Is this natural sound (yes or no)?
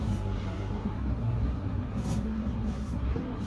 no